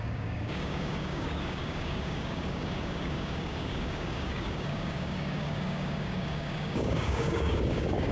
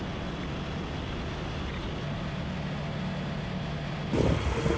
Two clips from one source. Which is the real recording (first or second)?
second